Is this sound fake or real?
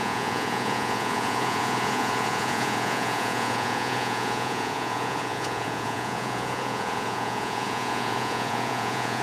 fake